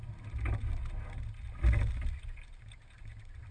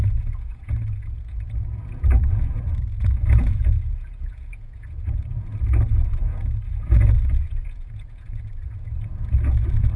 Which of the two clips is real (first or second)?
first